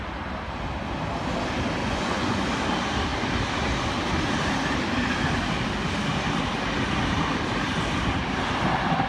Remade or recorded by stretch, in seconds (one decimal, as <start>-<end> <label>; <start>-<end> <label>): 0.0-1.8 recorded; 1.8-2.4 remade; 2.4-9.1 recorded